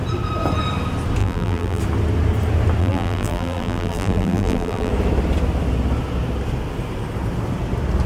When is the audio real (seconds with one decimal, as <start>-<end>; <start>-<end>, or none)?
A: 0.0-1.2; 1.8-2.8; 4.9-8.1